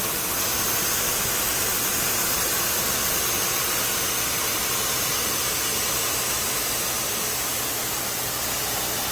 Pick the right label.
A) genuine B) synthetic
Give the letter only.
A